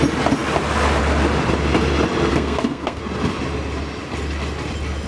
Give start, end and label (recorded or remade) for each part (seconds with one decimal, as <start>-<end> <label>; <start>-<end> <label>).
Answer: 0.0-2.3 recorded; 2.3-3.0 remade; 3.0-5.1 recorded

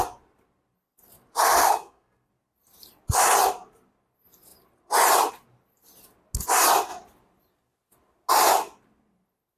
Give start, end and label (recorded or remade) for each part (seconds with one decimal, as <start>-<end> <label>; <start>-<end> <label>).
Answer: 0.0-1.6 recorded; 1.6-2.3 remade; 2.3-9.6 recorded